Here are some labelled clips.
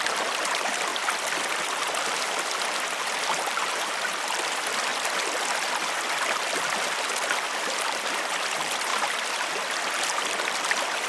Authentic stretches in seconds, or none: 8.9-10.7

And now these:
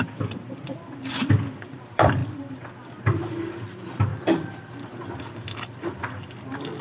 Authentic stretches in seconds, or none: 2.2-3.6

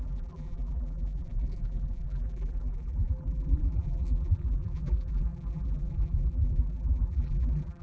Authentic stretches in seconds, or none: none